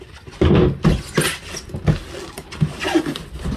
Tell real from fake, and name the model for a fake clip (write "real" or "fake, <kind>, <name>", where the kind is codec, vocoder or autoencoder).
real